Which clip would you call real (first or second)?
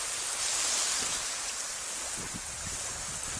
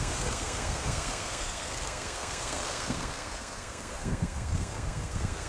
first